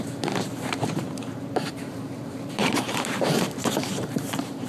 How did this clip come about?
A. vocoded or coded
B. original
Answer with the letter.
A